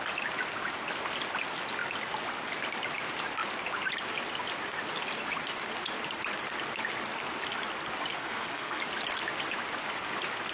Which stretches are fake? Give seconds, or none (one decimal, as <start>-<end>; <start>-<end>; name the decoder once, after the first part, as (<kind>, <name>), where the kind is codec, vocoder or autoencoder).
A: 8.2-8.8 (codec, SNAC)